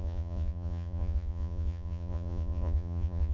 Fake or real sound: fake